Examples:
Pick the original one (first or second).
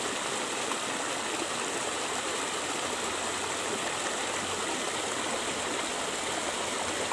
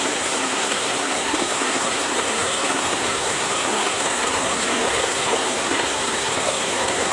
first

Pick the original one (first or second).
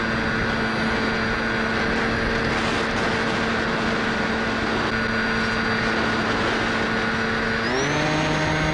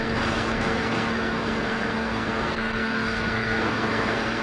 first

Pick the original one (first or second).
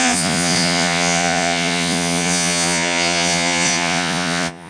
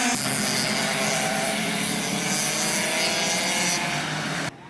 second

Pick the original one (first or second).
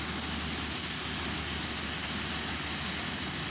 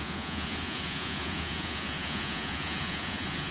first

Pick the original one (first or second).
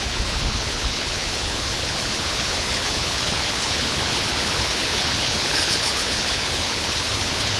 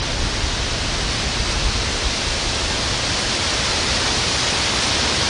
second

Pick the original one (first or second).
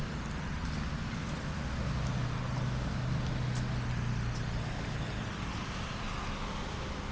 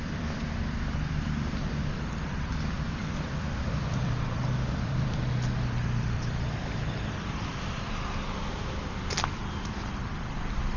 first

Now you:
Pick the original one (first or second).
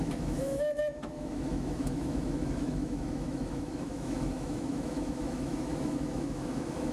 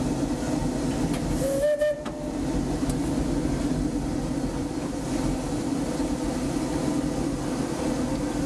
second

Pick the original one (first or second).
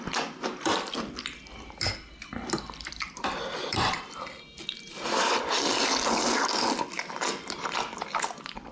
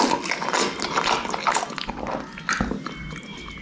second